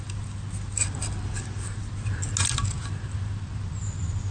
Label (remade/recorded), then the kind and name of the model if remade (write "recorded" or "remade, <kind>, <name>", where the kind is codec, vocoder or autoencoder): recorded